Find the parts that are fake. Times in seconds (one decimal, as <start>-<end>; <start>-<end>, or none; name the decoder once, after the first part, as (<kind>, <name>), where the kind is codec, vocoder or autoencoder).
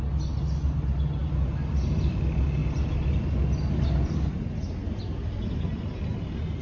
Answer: none